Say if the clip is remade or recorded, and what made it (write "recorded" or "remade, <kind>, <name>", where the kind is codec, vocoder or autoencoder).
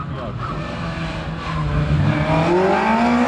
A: recorded